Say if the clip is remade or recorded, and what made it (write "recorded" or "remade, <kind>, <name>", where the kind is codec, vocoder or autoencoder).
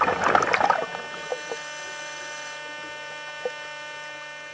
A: recorded